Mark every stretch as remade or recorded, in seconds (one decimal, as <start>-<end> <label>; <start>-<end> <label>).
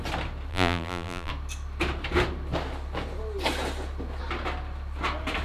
0.0-0.5 recorded; 0.5-1.3 remade; 1.3-5.4 recorded